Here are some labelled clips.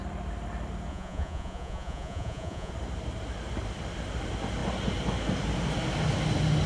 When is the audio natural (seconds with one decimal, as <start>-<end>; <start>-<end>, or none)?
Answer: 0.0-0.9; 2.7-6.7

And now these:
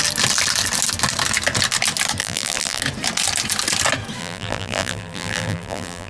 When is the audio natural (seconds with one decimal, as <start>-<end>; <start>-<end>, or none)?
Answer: 0.0-2.2; 2.8-4.2

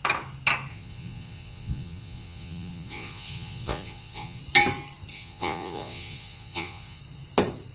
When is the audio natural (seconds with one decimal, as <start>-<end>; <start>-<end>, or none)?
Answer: 0.0-0.7; 4.4-5.1; 7.0-7.7

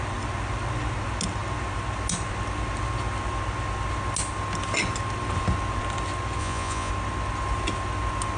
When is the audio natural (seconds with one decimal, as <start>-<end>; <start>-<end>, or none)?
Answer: 0.0-6.4; 6.9-8.4

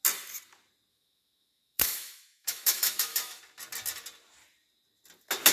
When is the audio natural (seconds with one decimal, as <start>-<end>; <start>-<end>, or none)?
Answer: 0.0-0.9; 3.4-5.5

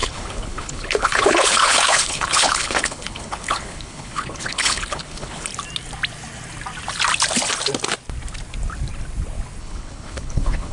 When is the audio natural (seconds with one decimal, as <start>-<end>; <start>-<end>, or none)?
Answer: 5.5-9.6

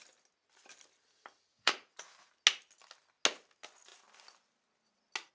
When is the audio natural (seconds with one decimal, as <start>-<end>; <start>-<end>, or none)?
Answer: 0.0-1.5; 2.3-5.3